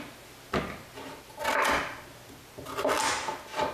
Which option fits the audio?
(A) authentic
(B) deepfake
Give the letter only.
A